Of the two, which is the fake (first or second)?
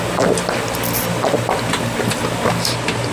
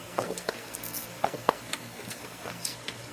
second